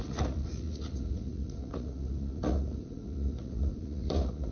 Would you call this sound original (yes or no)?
no